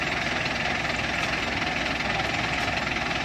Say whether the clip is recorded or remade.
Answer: recorded